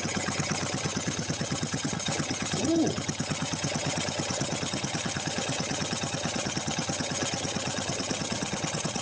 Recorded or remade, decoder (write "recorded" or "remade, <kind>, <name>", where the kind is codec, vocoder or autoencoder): remade, vocoder, HiFi-GAN